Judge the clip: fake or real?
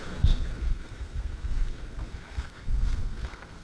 fake